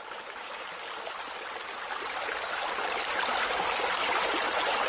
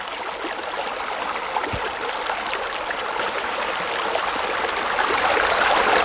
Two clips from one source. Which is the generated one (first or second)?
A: first